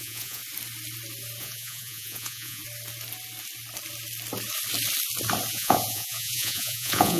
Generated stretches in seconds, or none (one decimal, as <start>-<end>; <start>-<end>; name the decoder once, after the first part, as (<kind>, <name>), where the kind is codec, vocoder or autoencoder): 0.0-0.4 (vocoder, Vocos); 1.4-2.6; 5.5-7.2